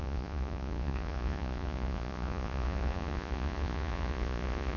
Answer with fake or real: fake